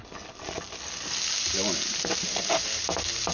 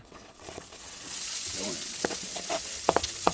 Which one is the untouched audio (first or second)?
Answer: first